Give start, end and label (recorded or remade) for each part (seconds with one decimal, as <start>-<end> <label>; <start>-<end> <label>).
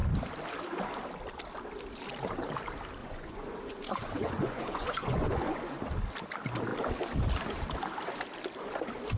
0.0-3.0 recorded; 3.0-5.8 remade; 5.8-9.2 recorded